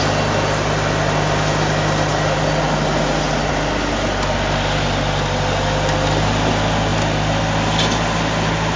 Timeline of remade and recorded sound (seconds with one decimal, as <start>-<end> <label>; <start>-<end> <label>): 0.0-8.8 recorded